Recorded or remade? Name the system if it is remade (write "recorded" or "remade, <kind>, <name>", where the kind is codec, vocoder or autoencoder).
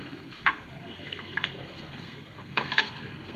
remade, codec, SNAC